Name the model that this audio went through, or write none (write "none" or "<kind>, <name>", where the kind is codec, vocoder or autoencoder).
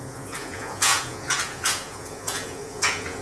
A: vocoder, Vocos